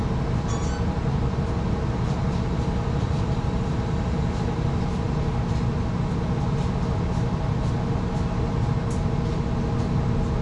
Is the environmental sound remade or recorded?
recorded